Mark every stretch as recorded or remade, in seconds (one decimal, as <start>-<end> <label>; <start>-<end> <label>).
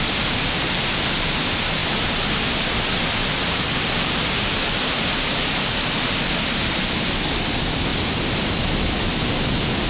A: 0.0-9.9 remade